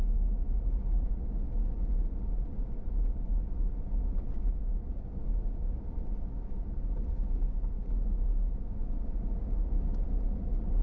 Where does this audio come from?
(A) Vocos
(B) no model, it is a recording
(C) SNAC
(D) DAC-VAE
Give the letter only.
B